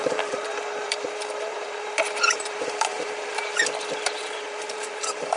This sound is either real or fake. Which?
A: fake